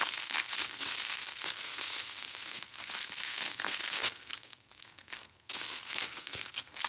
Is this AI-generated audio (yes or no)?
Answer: yes